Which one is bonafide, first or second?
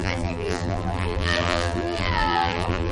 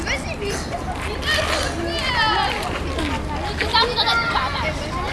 second